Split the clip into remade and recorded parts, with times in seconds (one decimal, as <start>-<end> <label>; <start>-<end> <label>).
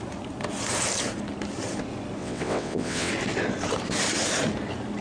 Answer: 0.0-2.2 recorded; 2.2-3.1 remade; 3.1-5.0 recorded